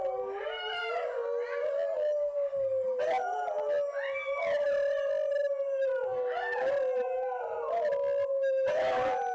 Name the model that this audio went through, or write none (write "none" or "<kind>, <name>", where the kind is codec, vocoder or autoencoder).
none